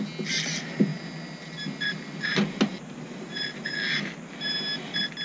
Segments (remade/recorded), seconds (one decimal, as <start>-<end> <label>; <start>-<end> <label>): 0.0-5.2 recorded